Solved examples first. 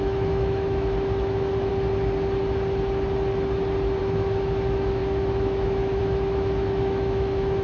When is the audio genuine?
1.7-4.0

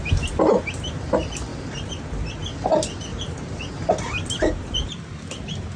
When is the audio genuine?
0.0-1.5; 2.0-3.1; 5.0-5.8

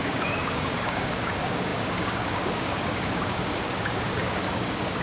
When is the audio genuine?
none